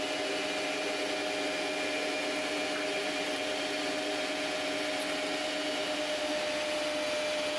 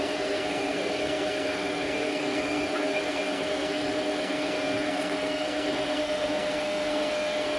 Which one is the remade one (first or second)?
second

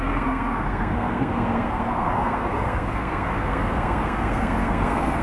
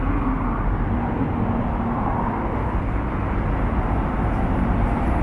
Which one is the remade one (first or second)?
first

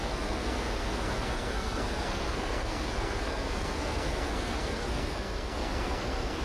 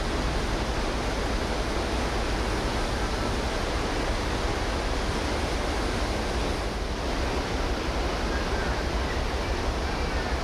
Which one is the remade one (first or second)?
first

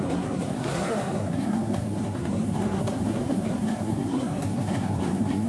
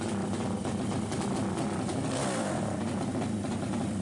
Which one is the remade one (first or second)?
first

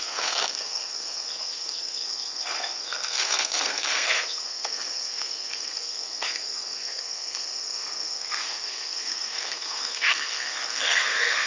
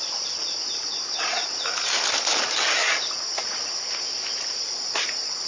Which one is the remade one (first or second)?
first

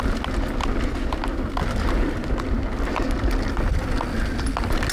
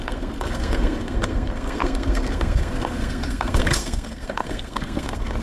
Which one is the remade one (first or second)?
second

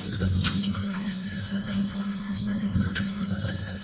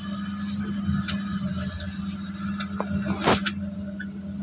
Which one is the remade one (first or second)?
first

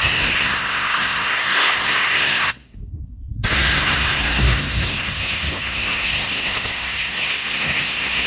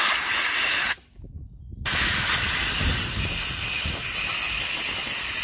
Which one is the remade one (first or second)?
first